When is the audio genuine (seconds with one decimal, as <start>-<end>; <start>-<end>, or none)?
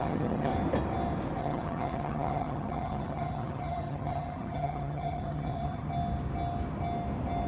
0.5-1.4; 5.8-7.5